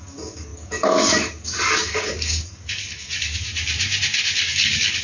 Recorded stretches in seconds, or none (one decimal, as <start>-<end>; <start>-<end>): 3.5-4.4